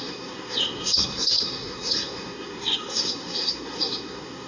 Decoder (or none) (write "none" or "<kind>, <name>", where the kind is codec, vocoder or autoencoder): codec, SNAC